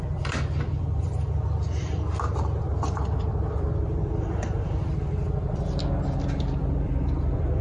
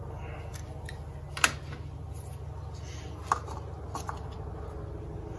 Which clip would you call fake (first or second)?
first